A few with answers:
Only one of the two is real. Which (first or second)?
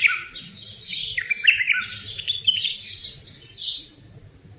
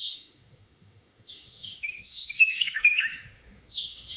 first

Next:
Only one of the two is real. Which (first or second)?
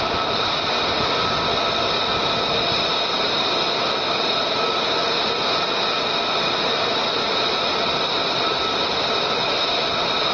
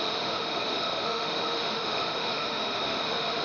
first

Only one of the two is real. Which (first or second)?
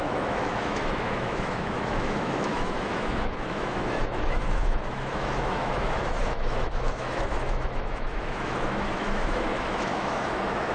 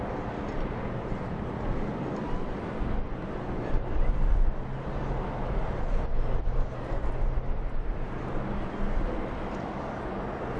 second